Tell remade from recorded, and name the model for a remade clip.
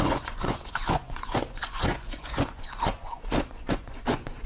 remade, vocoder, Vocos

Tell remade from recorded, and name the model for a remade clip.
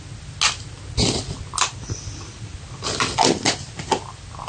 recorded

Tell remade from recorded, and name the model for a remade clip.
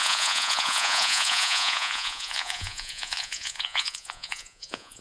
remade, vocoder, Vocos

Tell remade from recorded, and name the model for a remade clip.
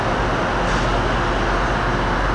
recorded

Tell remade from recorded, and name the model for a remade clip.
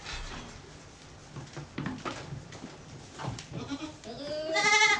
recorded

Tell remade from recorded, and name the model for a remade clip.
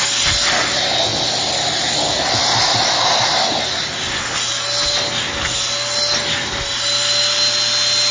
recorded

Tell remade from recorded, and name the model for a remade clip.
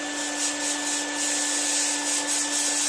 recorded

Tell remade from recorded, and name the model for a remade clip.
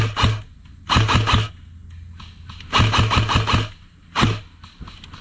recorded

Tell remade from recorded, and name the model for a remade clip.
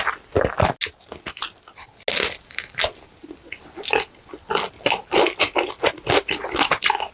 recorded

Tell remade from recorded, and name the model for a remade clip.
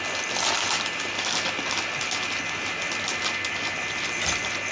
recorded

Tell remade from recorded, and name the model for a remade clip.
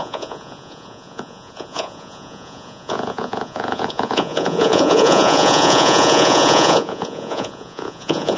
remade, vocoder, Vocos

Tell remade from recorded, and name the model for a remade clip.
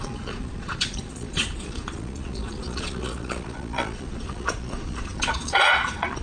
remade, vocoder, Vocos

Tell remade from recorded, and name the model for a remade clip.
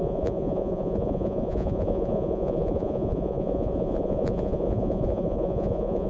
remade, vocoder, Vocos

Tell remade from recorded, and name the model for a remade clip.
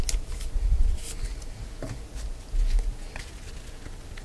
recorded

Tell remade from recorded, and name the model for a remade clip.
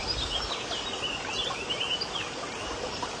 recorded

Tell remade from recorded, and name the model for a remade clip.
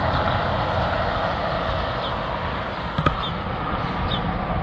recorded